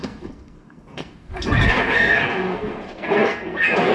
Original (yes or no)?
no